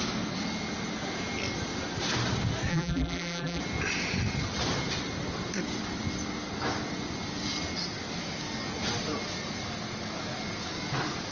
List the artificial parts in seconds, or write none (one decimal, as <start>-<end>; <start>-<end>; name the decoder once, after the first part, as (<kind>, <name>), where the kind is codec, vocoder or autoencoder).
2.7-3.6 (vocoder, BigVGAN v2)